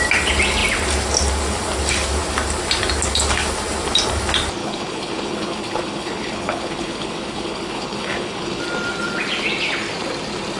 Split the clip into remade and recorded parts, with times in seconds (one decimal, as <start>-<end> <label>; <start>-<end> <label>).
0.0-4.6 recorded; 4.6-8.6 remade; 8.6-10.6 recorded